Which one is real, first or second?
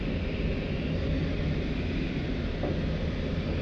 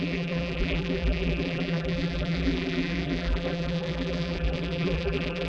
first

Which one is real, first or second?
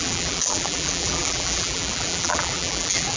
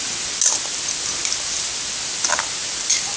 second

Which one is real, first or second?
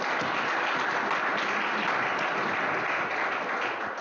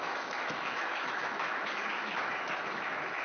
first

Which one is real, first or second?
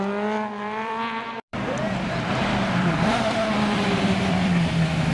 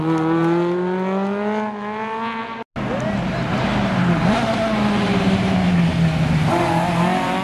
second